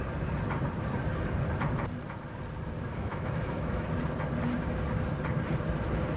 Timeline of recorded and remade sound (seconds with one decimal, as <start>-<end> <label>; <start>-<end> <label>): 0.0-2.9 recorded; 2.9-3.9 remade; 3.9-6.2 recorded